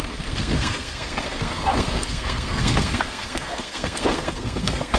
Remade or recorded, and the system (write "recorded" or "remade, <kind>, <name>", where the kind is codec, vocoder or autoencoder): remade, codec, SNAC